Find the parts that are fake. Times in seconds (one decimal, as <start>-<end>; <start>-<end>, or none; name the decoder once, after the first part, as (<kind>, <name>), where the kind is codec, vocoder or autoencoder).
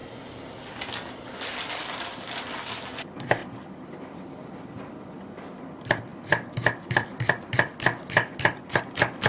3.4-4.5 (vocoder, BigVGAN v2); 6.1-8.5